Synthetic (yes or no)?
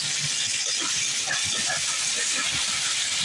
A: no